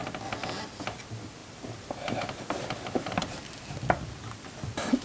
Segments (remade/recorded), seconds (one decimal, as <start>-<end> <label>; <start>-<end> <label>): 0.0-5.0 recorded